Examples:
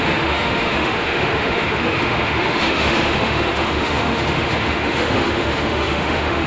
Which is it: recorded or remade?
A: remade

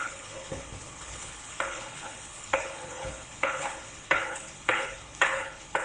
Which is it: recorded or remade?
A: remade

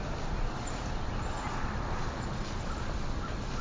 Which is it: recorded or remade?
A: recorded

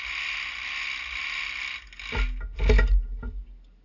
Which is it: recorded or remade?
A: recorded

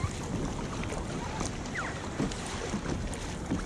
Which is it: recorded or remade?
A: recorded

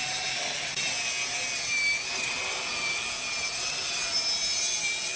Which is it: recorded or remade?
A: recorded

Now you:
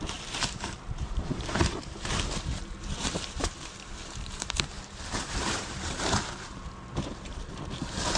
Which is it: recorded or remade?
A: remade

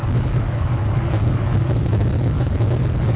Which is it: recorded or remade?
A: remade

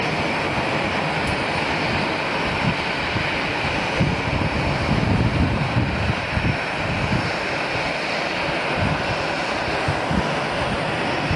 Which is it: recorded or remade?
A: recorded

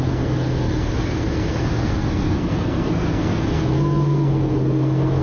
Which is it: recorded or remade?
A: remade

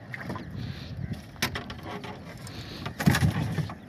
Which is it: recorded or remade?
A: recorded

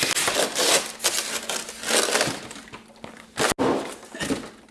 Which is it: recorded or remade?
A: recorded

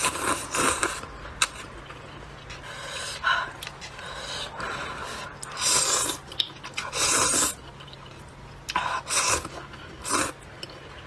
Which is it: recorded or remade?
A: recorded